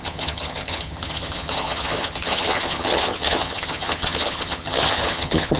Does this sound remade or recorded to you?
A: remade